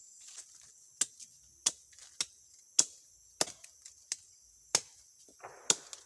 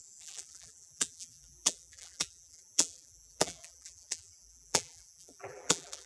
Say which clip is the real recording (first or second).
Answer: first